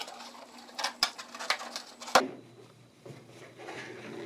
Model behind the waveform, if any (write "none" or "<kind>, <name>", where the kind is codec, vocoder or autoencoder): none